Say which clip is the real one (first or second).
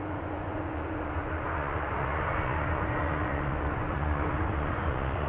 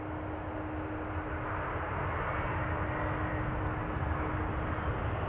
second